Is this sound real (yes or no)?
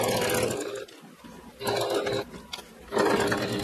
yes